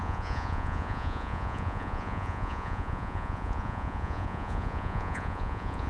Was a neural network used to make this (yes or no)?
yes